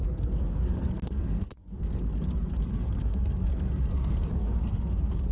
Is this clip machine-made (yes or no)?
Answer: yes